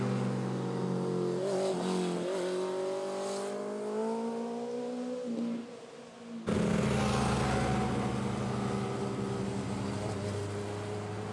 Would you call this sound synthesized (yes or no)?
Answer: no